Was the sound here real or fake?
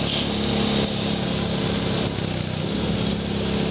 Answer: real